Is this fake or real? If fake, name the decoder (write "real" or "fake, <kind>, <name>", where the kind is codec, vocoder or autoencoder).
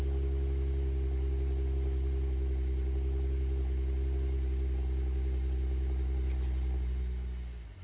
real